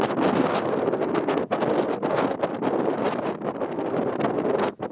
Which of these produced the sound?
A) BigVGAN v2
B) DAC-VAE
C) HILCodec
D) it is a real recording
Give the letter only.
D